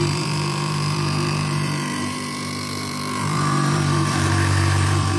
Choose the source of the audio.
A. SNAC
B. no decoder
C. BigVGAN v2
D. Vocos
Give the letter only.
C